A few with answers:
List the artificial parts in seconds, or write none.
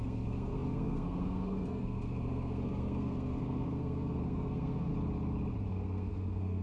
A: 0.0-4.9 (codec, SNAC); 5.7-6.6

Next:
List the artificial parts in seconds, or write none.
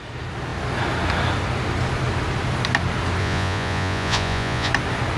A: 3.2-4.7 (vocoder, Vocos)